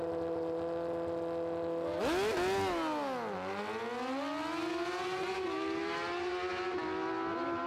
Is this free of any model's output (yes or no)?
yes